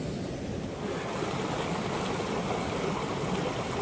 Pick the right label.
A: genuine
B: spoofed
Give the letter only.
A